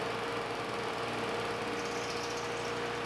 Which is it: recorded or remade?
recorded